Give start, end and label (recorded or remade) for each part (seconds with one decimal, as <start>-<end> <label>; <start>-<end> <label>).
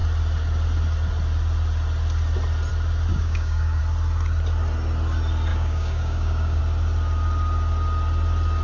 0.0-3.1 recorded; 3.1-3.8 remade; 3.8-5.5 recorded; 5.5-6.6 remade; 6.6-8.6 recorded